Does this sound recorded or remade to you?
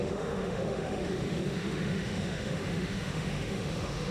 remade